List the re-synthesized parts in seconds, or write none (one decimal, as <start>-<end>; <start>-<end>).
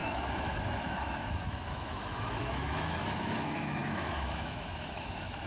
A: 0.0-5.5